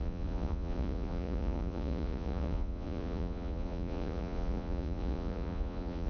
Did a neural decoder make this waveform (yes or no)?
yes